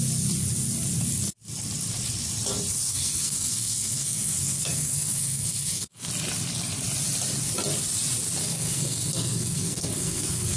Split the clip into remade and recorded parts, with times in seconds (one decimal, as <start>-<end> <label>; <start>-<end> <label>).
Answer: 0.0-2.9 recorded; 2.9-6.1 remade; 6.1-8.4 recorded; 8.4-10.6 remade